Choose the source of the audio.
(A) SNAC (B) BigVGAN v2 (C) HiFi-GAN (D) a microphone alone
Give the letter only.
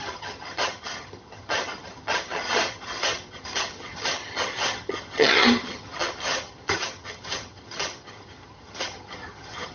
C